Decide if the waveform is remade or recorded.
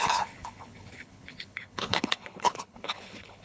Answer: remade